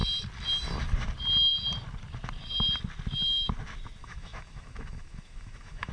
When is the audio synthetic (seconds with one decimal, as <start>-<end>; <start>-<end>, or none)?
4.0-5.9